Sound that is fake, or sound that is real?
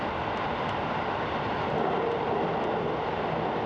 real